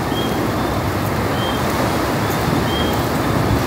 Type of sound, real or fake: real